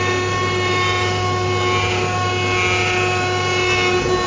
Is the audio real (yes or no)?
yes